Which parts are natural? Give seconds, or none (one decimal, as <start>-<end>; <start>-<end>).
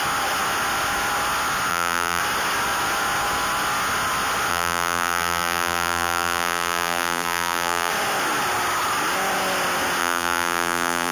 0.0-1.7; 2.2-4.5; 7.9-10.0